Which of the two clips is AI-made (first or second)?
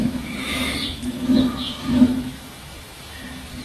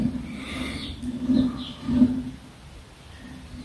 first